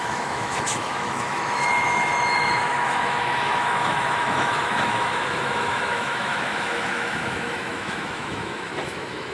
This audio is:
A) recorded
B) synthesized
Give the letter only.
B